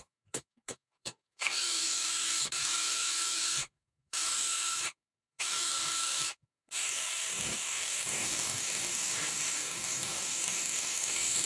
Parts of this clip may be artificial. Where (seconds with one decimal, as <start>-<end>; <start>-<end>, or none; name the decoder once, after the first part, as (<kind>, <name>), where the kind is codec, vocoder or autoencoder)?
0.0-11.5 (codec, DAC)